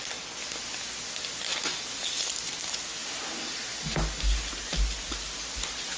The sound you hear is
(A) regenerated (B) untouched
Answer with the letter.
B